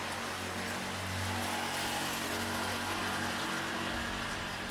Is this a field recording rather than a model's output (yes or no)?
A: yes